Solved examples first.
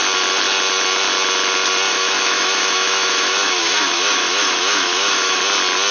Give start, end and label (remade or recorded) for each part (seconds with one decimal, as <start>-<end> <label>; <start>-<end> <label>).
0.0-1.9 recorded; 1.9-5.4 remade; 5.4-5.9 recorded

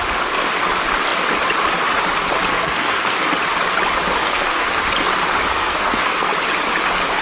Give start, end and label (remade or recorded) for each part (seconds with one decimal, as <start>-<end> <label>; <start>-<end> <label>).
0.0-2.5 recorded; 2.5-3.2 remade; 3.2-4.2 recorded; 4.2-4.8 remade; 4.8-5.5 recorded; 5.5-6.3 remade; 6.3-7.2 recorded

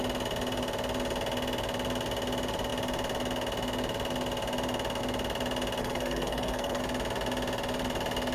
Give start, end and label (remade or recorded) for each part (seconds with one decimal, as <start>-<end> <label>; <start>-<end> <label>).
0.0-5.8 recorded; 5.8-6.8 remade; 6.8-8.3 recorded

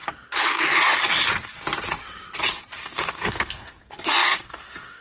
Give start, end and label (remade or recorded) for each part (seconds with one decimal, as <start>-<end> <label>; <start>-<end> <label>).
0.0-2.8 recorded; 2.8-5.0 remade

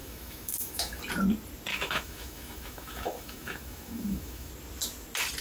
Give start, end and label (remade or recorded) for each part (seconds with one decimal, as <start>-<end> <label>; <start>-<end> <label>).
0.0-1.0 remade; 1.0-1.7 recorded; 1.7-4.5 remade; 4.5-5.4 recorded

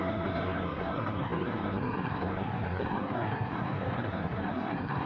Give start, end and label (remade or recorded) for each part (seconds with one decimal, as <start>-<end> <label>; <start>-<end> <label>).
0.0-5.1 remade

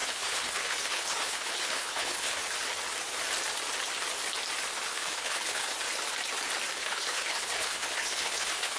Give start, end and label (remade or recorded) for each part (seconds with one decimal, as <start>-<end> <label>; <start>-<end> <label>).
0.0-2.4 remade; 2.4-4.9 recorded; 4.9-5.7 remade; 5.7-6.7 recorded; 6.7-8.8 remade